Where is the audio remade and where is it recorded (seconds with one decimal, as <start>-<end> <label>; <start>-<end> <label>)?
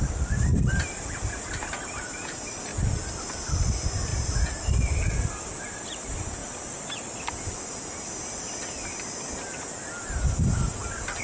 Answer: 0.0-0.5 remade; 0.5-1.0 recorded; 1.0-2.7 remade; 2.7-3.3 recorded; 3.3-6.4 remade; 6.4-11.2 recorded